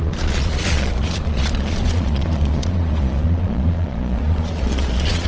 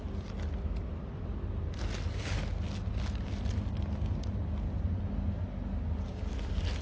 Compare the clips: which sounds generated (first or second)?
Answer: first